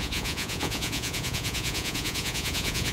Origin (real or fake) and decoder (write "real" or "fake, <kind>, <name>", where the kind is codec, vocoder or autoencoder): fake, vocoder, Vocos